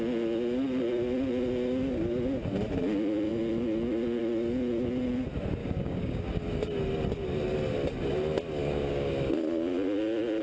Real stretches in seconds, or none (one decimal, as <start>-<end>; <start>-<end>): 0.0-5.6; 6.4-8.6; 9.1-10.4